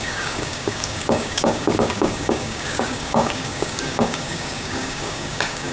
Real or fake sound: fake